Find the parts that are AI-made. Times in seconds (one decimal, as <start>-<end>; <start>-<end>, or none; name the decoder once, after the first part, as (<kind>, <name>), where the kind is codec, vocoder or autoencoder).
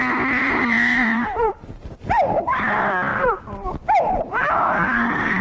0.4-2.4 (vocoder, BigVGAN v2); 3.1-5.4